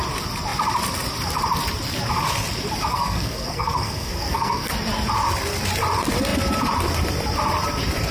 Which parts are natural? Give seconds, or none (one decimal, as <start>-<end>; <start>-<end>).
0.0-2.9; 4.7-8.1